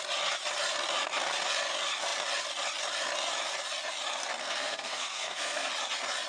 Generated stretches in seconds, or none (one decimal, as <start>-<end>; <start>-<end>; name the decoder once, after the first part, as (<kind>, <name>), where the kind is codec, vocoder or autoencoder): 4.4-5.7 (codec, SNAC)